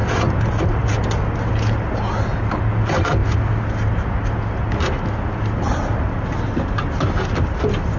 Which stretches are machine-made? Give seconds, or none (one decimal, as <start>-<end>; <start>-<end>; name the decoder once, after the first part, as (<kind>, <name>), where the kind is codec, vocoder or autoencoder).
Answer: none